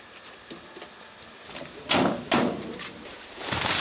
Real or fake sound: real